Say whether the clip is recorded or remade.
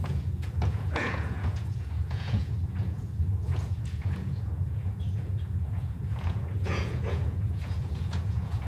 remade